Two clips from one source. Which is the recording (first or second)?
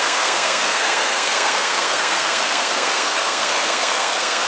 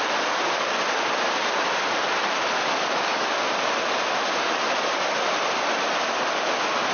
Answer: second